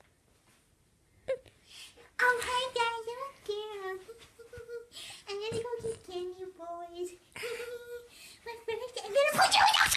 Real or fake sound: real